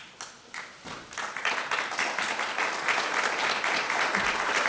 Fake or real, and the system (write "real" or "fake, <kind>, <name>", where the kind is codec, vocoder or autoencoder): real